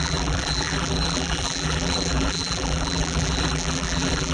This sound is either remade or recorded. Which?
remade